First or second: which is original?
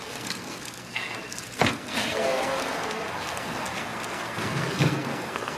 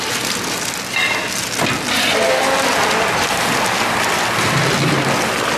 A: second